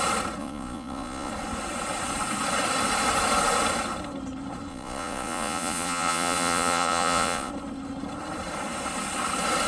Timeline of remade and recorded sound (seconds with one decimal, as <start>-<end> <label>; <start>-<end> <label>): 0.0-0.4 recorded; 0.4-1.3 remade; 1.3-4.7 recorded; 4.7-7.5 remade; 7.5-9.7 recorded